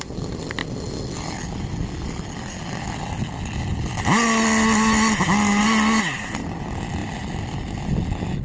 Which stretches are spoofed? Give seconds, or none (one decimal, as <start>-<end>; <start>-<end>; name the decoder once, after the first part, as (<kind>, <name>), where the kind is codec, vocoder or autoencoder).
none